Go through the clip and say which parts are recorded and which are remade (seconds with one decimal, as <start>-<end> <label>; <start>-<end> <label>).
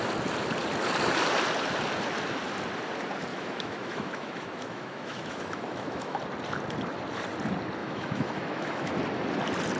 0.0-3.3 recorded; 3.3-6.2 remade; 6.2-7.8 recorded; 7.8-8.9 remade; 8.9-9.8 recorded